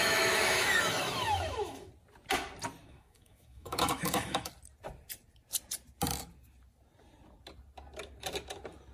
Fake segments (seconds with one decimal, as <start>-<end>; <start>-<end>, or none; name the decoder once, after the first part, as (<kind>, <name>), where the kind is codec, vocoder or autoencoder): 0.0-1.9 (autoencoder, DAC-VAE); 2.8-4.5